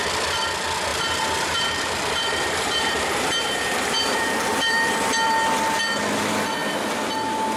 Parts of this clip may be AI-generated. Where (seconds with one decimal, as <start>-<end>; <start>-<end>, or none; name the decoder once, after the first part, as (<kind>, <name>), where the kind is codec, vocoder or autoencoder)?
0.9-4.9 (vocoder, BigVGAN v2)

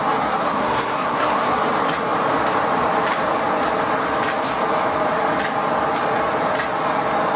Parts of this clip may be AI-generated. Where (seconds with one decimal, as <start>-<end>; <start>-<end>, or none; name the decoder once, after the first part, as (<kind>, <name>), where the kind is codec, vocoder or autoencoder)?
0.4-1.5 (codec, SNAC)

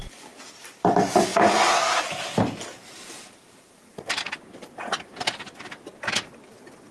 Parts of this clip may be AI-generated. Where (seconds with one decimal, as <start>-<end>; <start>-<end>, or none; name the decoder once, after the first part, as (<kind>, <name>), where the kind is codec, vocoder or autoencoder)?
none

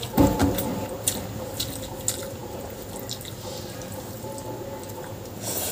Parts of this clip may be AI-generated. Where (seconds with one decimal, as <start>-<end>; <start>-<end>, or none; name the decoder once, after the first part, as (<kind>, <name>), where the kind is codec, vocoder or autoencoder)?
none

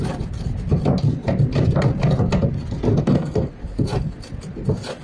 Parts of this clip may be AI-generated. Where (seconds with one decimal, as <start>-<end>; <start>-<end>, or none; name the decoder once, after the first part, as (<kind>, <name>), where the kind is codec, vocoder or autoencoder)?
2.9-3.5 (codec, SNAC)

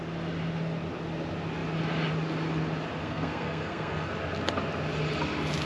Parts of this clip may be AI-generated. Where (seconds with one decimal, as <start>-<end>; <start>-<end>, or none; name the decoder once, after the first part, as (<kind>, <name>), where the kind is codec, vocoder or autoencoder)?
3.0-4.1 (codec, SNAC)

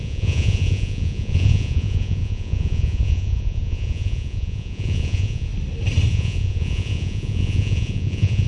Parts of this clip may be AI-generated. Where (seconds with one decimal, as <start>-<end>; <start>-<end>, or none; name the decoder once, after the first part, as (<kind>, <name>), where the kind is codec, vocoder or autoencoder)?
0.0-5.5 (vocoder, Vocos); 6.1-8.5